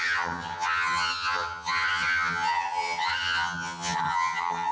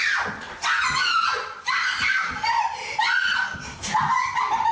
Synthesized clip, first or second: first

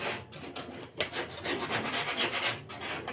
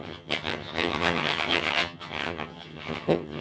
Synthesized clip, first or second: second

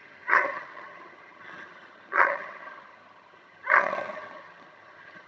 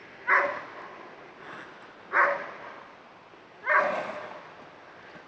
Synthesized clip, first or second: first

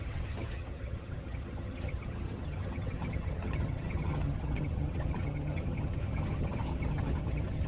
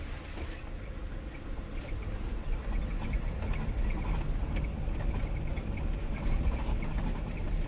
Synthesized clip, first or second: first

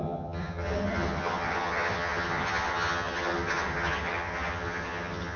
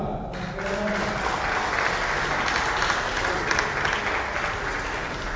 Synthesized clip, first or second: first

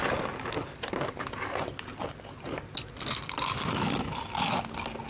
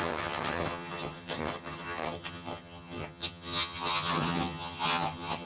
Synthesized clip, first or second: second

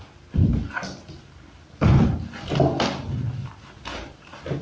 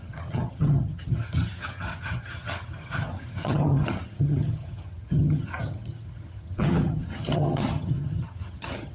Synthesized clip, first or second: second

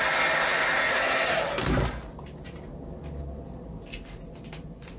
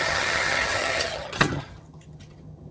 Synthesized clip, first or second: second